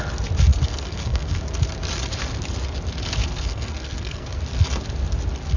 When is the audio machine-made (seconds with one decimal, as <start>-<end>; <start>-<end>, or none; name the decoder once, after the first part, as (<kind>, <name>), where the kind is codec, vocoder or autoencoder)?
0.5-1.4 (codec, SNAC); 3.2-4.4